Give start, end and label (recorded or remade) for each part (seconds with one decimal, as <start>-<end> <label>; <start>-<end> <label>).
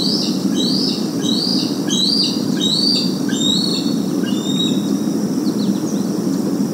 0.0-6.7 recorded